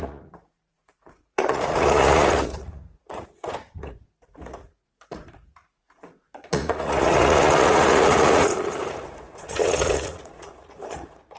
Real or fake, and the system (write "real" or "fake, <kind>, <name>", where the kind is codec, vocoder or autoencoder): fake, vocoder, Vocos